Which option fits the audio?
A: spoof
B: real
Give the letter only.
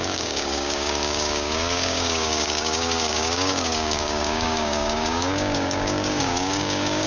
A